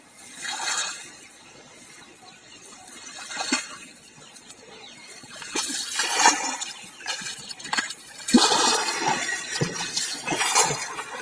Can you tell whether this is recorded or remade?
remade